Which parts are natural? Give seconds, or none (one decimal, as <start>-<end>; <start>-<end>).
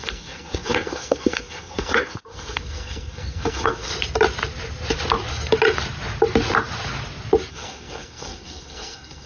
3.9-7.5